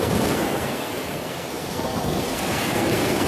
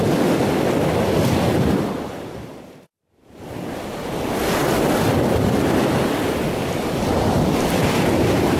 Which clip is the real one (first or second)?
second